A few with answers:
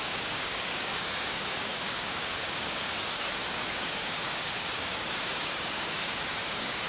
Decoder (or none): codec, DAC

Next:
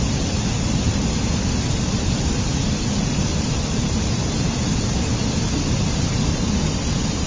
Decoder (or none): none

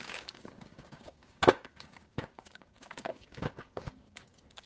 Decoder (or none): codec, DAC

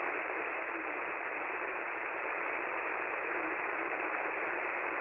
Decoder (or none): none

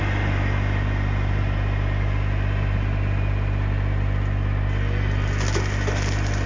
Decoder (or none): none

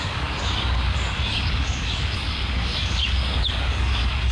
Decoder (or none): codec, DAC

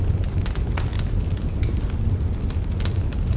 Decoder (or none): none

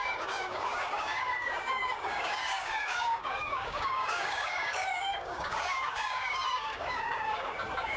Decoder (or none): codec, DAC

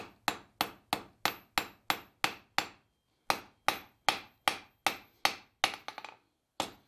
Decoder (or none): none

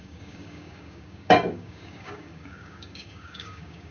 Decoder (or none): codec, DAC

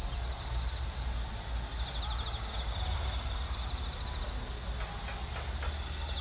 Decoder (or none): none